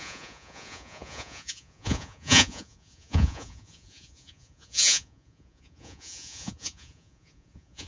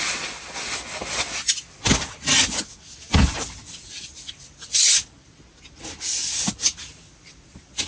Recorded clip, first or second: second